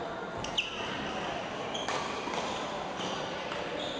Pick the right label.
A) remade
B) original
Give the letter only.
B